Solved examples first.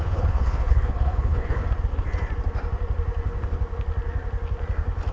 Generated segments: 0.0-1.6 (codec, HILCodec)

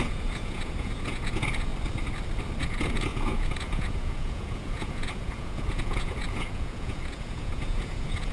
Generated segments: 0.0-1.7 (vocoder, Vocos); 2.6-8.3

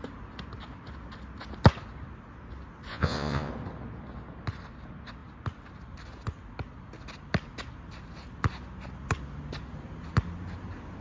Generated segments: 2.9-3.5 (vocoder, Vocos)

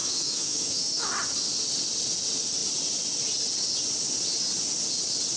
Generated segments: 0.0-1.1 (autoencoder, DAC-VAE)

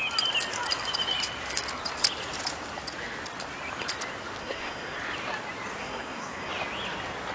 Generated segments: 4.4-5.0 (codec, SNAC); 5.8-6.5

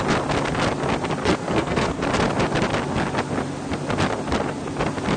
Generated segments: 1.2-2.0 (codec, SNAC)

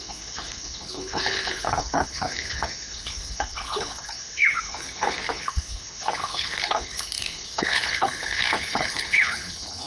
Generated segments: 0.0-9.9 (codec, HILCodec)